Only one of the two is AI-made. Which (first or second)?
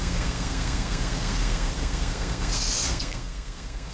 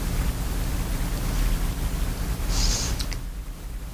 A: first